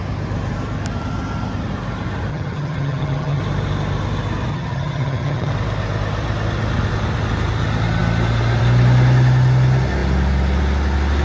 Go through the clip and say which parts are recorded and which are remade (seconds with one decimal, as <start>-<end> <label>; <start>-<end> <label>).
0.0-2.3 recorded; 2.3-3.4 remade; 3.4-4.5 recorded; 4.5-5.5 remade; 5.5-11.2 recorded